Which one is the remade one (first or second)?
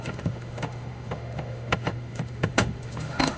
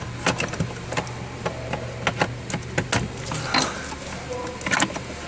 first